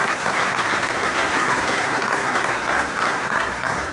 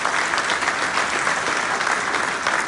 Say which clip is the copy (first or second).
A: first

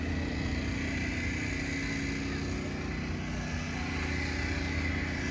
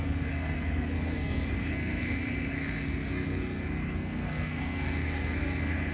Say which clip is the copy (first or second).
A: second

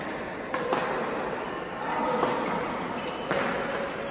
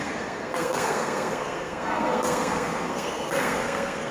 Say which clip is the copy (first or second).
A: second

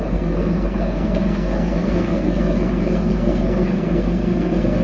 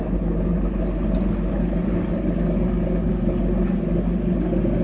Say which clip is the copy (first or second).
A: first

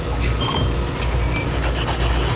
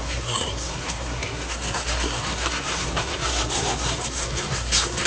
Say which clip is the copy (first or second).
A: second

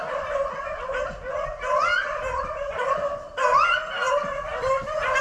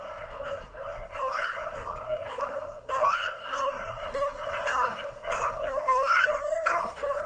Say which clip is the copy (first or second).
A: second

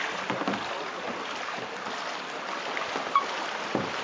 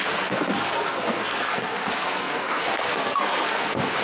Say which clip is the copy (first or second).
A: second